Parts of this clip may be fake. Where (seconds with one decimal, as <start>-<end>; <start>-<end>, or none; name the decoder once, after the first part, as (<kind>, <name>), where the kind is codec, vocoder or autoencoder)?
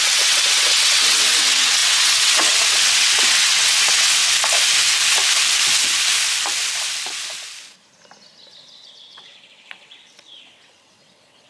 0.0-4.2 (vocoder, WaveNeXt); 8.9-11.5